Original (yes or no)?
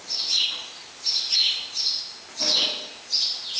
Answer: yes